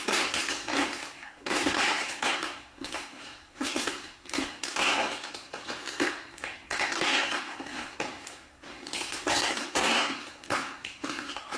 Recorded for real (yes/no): no